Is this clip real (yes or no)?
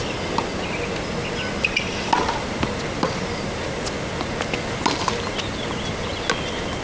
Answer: yes